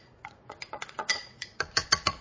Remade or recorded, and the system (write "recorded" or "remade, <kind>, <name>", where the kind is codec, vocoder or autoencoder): remade, vocoder, Vocos